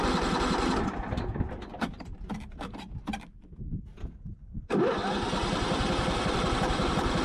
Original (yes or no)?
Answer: no